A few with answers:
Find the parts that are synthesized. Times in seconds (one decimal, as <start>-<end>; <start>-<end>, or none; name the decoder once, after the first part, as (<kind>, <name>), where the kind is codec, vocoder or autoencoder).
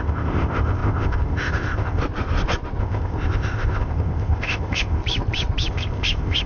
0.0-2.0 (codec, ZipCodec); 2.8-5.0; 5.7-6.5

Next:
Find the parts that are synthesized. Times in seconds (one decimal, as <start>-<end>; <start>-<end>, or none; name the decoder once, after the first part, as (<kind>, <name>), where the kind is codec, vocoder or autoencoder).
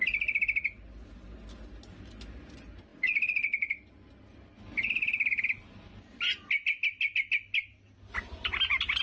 none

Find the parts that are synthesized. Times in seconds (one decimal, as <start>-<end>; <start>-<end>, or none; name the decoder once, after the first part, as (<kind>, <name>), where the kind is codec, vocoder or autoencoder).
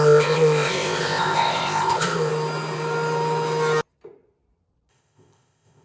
0.0-2.3 (codec, ZipCodec); 4.9-5.8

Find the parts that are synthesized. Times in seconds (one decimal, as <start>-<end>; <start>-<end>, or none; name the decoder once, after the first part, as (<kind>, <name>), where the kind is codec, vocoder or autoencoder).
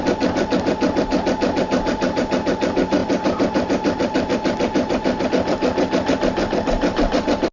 none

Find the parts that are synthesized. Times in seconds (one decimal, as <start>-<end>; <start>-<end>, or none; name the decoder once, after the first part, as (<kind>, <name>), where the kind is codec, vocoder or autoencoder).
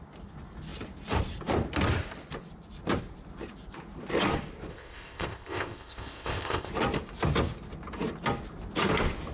4.7-6.7 (codec, ZipCodec)